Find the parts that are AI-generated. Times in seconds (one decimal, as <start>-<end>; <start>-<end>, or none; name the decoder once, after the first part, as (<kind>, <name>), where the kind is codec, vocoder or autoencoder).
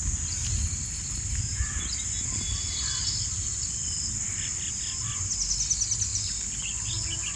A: 6.1-7.4 (vocoder, BigVGAN v2)